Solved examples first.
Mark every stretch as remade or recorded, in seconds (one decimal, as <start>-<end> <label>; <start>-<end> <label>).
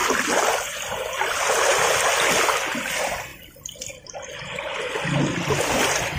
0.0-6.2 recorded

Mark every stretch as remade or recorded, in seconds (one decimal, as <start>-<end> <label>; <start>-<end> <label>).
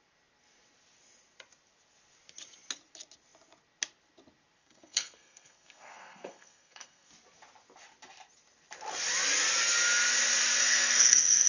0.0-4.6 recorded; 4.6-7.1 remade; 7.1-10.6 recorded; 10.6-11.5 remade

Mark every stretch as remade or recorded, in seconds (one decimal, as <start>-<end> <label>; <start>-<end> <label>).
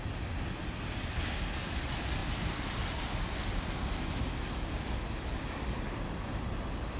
0.0-7.0 recorded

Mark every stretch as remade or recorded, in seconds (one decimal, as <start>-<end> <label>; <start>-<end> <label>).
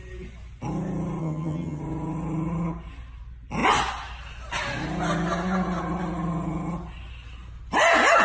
0.0-1.2 recorded; 1.2-1.8 remade; 1.8-8.2 recorded